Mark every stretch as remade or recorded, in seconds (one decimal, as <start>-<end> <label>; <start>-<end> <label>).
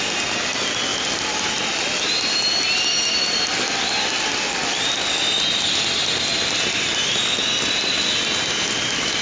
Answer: 0.0-9.2 recorded